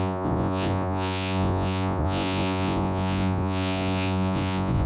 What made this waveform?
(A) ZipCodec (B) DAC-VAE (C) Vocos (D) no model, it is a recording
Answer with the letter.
C